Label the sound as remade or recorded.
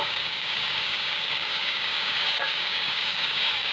remade